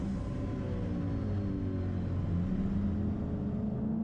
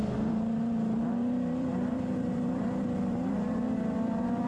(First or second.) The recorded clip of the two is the first